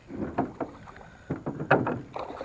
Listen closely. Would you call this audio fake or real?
real